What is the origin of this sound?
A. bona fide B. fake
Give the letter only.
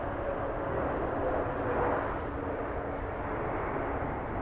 A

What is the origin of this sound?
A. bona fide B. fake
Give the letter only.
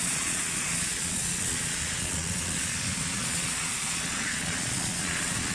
B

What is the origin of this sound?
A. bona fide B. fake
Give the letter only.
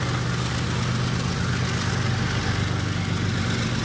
A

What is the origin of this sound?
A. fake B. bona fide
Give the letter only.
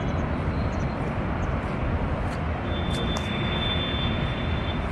B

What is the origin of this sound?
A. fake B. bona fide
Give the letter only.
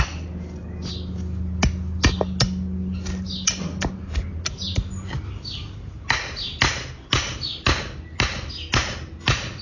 B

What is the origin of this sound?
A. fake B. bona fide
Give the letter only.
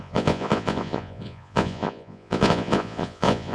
A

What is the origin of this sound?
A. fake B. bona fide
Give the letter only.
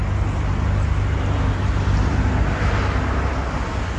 B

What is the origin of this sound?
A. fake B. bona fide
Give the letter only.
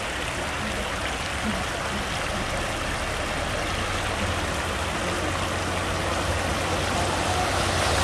B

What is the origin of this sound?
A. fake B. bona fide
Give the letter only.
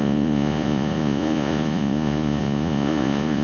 A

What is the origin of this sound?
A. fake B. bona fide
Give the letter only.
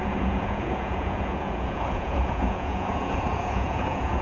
A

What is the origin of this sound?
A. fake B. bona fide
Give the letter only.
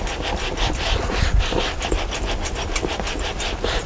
B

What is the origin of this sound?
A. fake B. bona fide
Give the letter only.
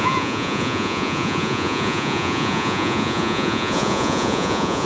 A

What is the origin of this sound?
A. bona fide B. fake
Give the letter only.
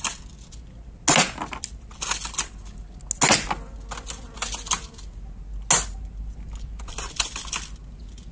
A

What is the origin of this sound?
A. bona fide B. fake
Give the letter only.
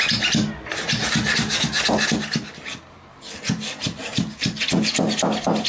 A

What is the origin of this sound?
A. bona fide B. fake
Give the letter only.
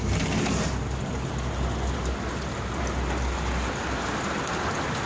A